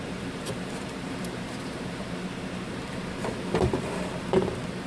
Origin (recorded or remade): remade